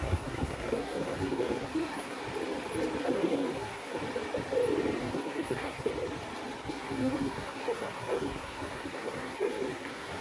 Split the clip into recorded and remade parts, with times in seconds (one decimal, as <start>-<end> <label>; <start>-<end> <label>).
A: 0.0-2.2 remade; 2.2-3.0 recorded; 3.0-4.0 remade; 4.0-5.0 recorded; 5.0-5.9 remade; 5.9-6.7 recorded; 6.7-10.2 remade